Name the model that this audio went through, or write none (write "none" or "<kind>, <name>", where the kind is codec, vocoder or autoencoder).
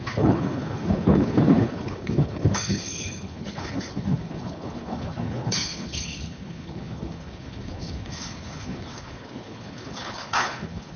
codec, HILCodec